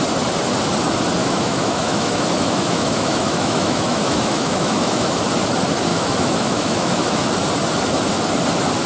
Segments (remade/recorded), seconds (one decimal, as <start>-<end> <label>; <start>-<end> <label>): 0.0-1.2 recorded; 1.2-5.1 remade; 5.1-5.9 recorded; 5.9-7.3 remade; 7.3-8.9 recorded